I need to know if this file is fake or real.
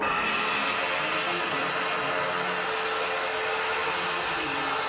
real